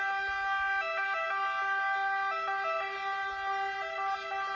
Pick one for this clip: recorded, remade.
recorded